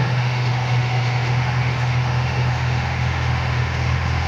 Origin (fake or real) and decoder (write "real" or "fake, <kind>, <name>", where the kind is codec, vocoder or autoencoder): fake, autoencoder, DAC-VAE